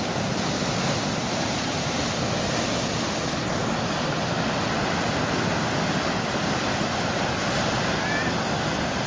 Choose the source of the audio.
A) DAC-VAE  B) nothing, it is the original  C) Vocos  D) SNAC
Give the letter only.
B